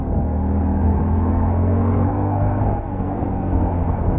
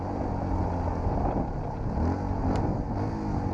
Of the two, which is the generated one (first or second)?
first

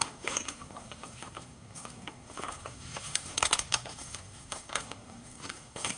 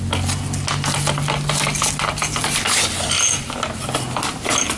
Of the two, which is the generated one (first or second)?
first